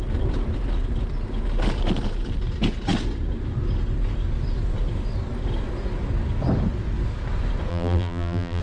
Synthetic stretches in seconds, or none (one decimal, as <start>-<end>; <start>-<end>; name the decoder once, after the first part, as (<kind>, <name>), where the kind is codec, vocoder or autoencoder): 7.7-8.6 (vocoder, BigVGAN v2)